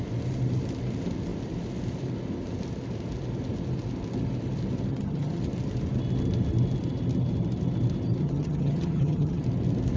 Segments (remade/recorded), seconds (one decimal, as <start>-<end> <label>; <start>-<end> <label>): 0.0-4.9 recorded; 4.9-5.4 remade; 5.4-8.2 recorded; 8.2-9.4 remade; 9.4-10.0 recorded